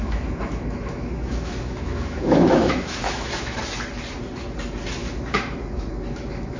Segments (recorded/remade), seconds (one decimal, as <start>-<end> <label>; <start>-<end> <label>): 0.0-3.6 remade; 3.6-5.0 recorded; 5.0-6.6 remade